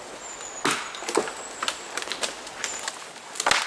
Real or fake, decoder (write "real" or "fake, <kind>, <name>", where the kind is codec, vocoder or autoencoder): real